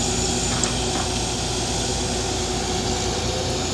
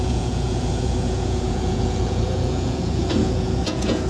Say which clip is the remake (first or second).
second